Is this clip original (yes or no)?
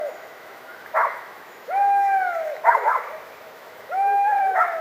no